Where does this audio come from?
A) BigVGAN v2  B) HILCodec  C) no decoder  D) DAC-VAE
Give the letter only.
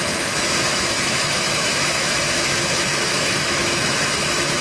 D